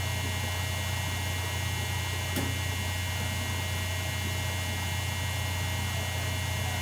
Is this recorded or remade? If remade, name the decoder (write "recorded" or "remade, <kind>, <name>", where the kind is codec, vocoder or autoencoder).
recorded